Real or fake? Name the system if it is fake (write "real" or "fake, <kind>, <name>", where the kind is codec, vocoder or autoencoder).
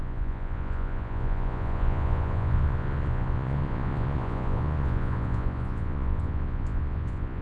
fake, vocoder, Vocos